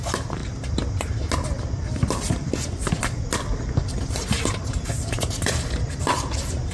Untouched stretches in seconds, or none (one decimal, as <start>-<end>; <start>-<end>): 0.4-4.4